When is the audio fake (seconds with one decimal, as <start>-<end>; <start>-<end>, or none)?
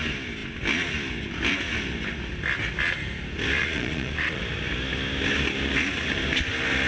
3.6-4.4